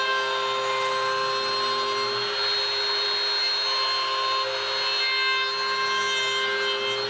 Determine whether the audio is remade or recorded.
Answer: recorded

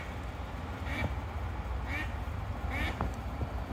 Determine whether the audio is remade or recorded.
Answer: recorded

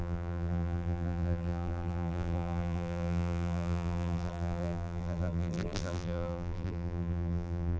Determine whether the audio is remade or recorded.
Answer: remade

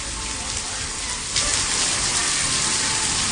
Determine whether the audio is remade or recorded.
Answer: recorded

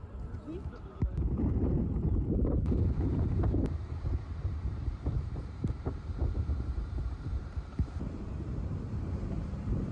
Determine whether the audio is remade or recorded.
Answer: remade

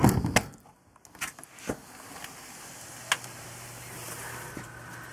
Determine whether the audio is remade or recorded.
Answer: recorded